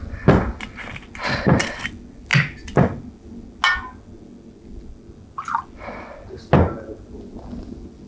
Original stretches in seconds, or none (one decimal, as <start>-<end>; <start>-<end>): 0.0-8.1